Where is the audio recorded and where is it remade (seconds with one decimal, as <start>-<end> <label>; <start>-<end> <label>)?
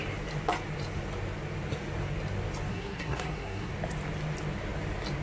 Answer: 0.0-2.7 recorded; 2.7-3.7 remade; 3.7-5.2 recorded